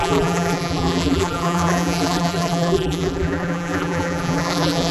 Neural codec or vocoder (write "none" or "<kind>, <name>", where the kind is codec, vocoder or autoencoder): vocoder, BigVGAN v2